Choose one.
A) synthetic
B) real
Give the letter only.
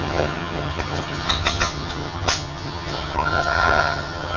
A